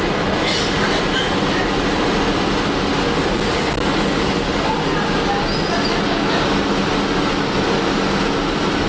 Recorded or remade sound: recorded